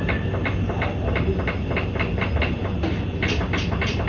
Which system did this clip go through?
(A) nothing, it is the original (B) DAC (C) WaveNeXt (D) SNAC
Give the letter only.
A